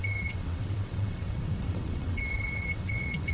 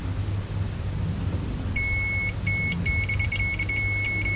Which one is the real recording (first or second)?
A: second